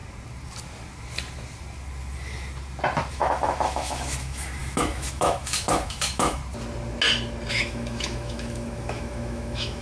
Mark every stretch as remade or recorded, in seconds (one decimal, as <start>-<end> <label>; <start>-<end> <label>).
0.0-3.1 recorded; 3.1-6.4 remade; 6.4-7.5 recorded; 7.5-9.8 remade